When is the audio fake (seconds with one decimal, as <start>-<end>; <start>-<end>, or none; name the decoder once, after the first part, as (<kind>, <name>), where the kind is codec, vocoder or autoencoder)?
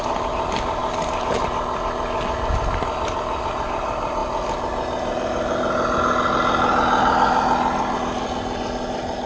none